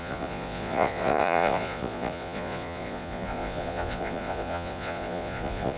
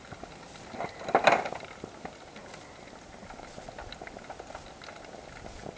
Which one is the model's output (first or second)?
first